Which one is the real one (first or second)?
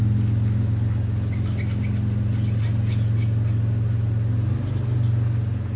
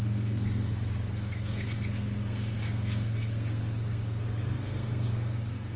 first